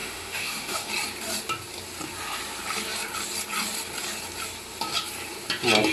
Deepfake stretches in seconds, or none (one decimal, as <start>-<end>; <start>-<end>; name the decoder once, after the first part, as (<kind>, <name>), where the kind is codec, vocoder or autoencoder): 0.0-0.9 (autoencoder, DAC-VAE)